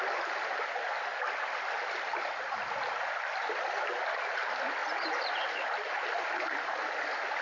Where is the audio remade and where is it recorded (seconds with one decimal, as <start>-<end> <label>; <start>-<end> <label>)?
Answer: 0.0-7.4 recorded